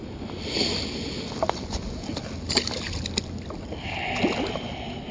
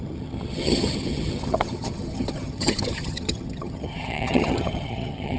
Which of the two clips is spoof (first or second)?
second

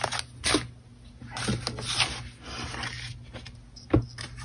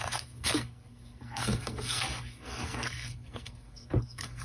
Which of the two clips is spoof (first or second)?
second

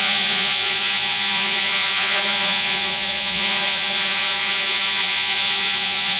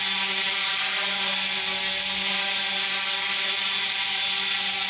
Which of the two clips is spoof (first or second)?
first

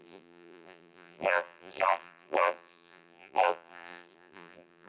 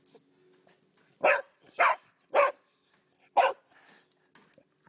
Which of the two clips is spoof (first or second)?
first